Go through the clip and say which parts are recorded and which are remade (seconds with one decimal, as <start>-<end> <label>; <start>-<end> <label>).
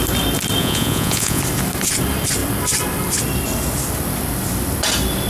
0.0-0.6 recorded; 0.6-1.4 remade; 1.4-5.3 recorded